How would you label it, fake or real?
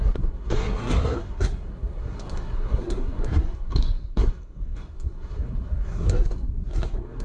fake